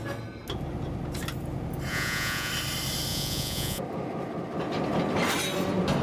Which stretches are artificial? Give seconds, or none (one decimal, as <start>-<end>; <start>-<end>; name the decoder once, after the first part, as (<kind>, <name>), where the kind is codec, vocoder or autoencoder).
1.9-2.5 (vocoder, Vocos); 3.1-3.8